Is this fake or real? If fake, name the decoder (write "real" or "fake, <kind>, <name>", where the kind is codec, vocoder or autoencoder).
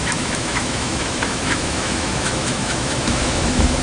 fake, autoencoder, DAC-VAE